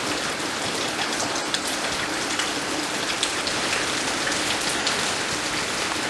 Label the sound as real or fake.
real